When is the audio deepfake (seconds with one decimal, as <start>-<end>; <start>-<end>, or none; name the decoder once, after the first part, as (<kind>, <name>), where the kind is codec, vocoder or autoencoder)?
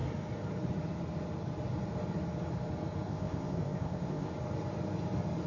3.1-4.3 (codec, ZipCodec)